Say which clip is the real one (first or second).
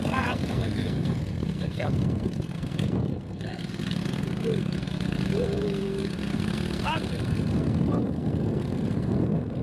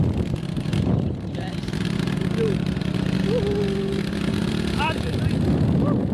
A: second